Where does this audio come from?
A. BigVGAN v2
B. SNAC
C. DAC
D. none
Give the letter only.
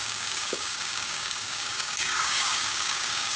C